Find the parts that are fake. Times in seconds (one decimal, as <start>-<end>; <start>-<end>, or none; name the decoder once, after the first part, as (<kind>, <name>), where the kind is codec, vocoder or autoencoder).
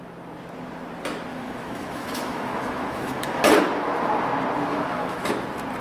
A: 1.3-3.4 (autoencoder, DAC-VAE); 4.7-5.3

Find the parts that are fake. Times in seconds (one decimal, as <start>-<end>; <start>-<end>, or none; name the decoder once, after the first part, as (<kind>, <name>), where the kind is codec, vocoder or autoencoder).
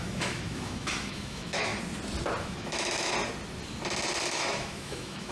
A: 0.0-1.7 (autoencoder, DAC-VAE); 2.4-3.1; 4.2-5.3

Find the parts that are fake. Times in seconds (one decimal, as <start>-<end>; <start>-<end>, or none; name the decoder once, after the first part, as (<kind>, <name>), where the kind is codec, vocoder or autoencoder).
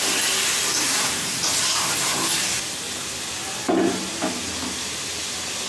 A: none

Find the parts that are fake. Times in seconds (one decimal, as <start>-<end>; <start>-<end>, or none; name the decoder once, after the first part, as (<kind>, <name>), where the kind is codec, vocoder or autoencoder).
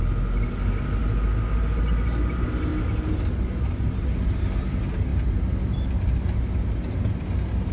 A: none